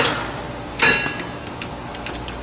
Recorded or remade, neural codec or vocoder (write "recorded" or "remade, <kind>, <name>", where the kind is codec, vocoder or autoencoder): recorded